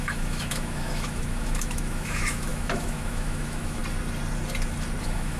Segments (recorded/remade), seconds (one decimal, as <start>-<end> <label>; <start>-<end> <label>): 0.0-3.8 remade; 3.8-5.0 recorded; 5.0-5.4 remade

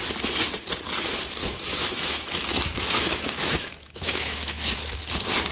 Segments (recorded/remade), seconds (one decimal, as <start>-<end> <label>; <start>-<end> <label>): 0.0-1.7 recorded; 1.7-5.0 remade; 5.0-5.5 recorded

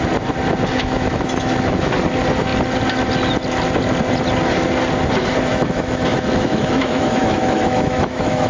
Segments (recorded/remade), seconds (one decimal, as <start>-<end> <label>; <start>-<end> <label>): 0.0-0.7 recorded; 0.7-1.9 remade; 1.9-5.5 recorded; 5.5-8.5 remade